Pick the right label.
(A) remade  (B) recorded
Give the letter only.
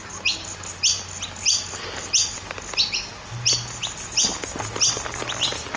B